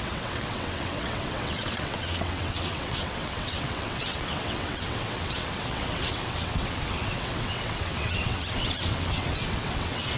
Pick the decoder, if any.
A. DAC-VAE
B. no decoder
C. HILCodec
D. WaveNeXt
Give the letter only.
D